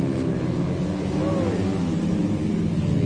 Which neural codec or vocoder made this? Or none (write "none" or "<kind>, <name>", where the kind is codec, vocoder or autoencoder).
none